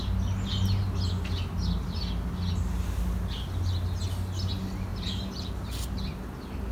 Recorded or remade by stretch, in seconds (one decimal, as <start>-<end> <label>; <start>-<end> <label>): 0.0-4.9 recorded; 4.9-5.5 remade; 5.5-6.7 recorded